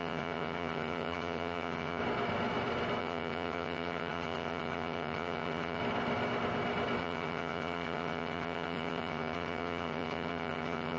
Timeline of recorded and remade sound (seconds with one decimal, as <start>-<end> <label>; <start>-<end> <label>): 0.0-2.0 remade; 2.0-3.0 recorded; 3.0-5.8 remade; 5.8-7.0 recorded; 7.0-11.0 remade